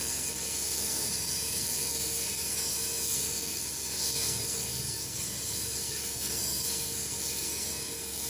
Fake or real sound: fake